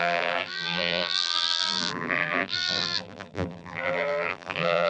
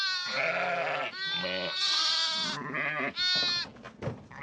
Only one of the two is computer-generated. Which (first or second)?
first